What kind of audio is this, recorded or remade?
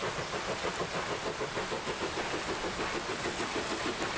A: recorded